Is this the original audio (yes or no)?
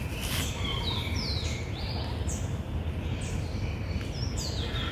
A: yes